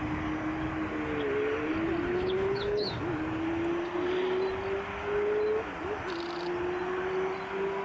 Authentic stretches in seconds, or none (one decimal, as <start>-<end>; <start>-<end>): 0.0-2.1; 3.0-7.8